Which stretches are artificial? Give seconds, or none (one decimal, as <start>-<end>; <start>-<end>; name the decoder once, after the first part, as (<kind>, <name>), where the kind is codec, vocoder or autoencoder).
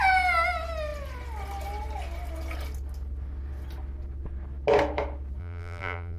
5.4-6.2 (vocoder, BigVGAN v2)